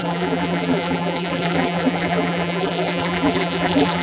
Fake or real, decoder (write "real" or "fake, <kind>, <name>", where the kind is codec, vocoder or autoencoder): fake, vocoder, BigVGAN v2